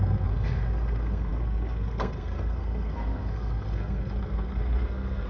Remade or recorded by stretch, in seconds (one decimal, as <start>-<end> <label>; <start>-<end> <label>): 0.0-5.3 remade